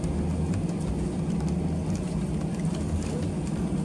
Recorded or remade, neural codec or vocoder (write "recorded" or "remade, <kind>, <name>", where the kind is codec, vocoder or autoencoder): recorded